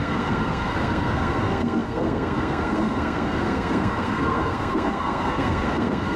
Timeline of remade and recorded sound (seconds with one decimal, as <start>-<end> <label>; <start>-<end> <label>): 0.0-6.2 remade